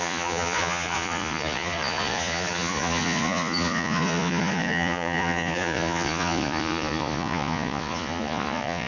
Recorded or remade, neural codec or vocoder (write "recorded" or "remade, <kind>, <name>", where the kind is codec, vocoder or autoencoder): remade, vocoder, Vocos